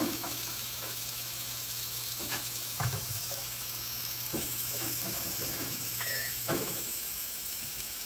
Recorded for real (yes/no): no